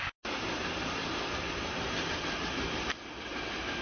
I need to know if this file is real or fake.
real